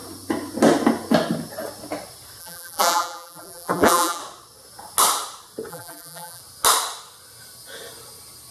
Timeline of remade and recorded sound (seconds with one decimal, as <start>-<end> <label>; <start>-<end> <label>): 0.0-2.4 recorded; 2.4-4.2 remade; 4.2-5.7 recorded; 5.7-6.4 remade; 6.4-8.5 recorded